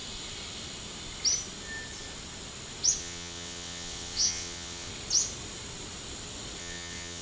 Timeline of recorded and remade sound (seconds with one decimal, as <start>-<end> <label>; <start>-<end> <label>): 0.0-3.0 recorded; 3.0-4.9 remade; 4.9-6.6 recorded; 6.6-7.2 remade